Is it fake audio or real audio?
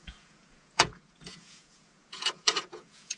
fake